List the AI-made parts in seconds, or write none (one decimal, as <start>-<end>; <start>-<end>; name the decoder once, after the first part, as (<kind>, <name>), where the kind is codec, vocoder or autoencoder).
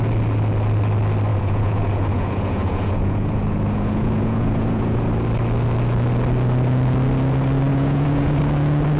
1.3-5.1 (vocoder, Vocos); 7.7-8.4